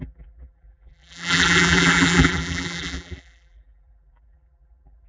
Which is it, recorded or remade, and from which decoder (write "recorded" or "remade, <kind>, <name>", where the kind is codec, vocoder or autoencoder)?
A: remade, vocoder, BigVGAN v2